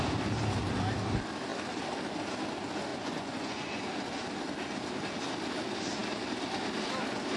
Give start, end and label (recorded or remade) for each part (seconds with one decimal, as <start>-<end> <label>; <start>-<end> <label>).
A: 0.0-2.9 recorded; 2.9-3.8 remade; 3.8-7.4 recorded